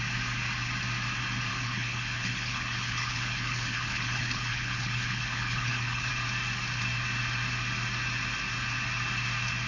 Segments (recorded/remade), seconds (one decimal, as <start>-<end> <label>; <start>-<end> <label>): 0.0-1.5 recorded; 1.5-6.1 remade; 6.1-9.7 recorded